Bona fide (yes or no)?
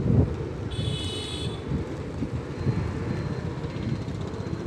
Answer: yes